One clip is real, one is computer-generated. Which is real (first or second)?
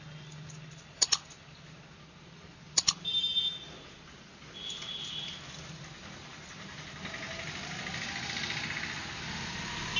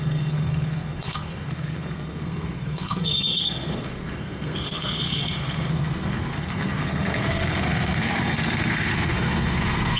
first